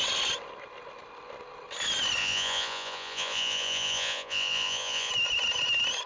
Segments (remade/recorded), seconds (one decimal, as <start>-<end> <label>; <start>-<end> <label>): 0.0-2.2 recorded; 2.2-5.1 remade; 5.1-6.1 recorded